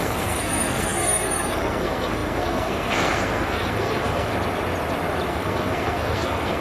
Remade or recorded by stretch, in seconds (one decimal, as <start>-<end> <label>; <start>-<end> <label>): 0.0-4.3 remade; 4.3-5.3 recorded; 5.3-6.6 remade